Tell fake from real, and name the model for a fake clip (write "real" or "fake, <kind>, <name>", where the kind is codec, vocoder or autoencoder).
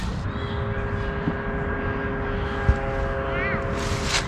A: real